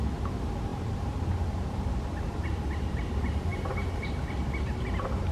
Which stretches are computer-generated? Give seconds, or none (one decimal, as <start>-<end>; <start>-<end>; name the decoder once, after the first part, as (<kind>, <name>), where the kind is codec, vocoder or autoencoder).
none